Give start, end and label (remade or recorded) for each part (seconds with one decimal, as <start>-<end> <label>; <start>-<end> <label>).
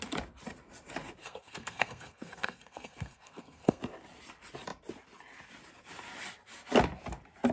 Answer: 0.0-1.2 recorded; 1.2-3.8 remade; 3.8-7.5 recorded